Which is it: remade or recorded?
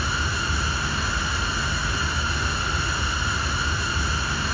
recorded